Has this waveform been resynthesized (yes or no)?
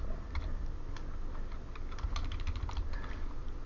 no